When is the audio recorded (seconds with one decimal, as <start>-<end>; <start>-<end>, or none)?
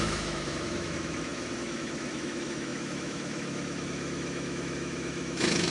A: none